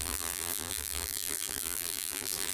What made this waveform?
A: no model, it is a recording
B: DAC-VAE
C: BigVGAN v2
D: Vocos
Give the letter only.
C